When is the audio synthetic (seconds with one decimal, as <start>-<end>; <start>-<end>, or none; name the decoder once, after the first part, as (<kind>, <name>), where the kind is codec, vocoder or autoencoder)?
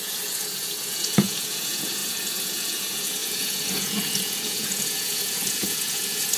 0.0-6.4 (vocoder, Vocos)